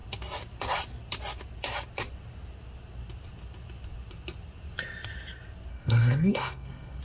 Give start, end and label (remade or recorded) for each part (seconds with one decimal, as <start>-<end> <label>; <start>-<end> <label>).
0.0-5.7 recorded; 5.7-7.0 remade